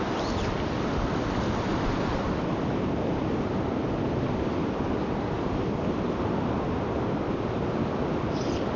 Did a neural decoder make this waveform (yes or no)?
no